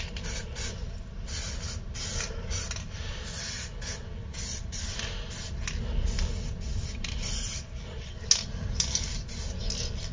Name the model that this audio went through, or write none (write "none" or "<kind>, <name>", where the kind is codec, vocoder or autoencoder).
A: none